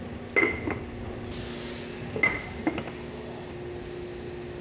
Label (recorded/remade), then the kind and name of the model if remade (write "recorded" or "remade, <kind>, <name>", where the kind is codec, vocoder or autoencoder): recorded